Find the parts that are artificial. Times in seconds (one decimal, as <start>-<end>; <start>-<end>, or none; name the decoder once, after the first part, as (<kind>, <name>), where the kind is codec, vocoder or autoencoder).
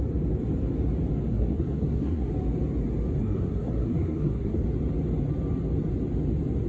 1.3-2.3 (codec, SNAC); 3.2-4.6